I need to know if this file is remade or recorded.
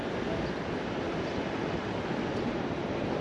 recorded